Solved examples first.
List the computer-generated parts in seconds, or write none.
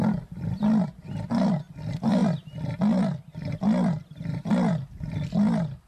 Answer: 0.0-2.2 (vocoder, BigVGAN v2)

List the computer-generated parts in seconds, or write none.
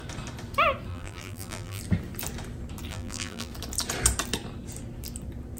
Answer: 0.9-1.8 (vocoder, BigVGAN v2); 2.9-3.5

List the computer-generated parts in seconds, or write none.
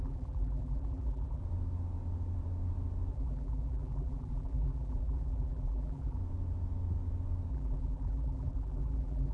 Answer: 0.0-1.4 (vocoder, BigVGAN v2); 3.1-6.2; 7.5-9.3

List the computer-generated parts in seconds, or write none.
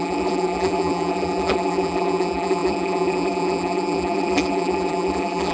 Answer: 0.0-5.5 (vocoder, BigVGAN v2)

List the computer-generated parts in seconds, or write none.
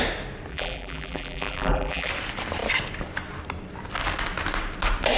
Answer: 0.5-2.1 (vocoder, BigVGAN v2)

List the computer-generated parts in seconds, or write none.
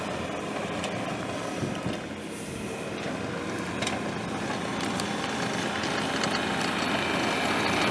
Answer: none